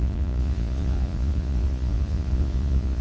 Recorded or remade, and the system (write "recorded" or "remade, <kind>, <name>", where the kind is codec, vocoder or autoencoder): remade, vocoder, Vocos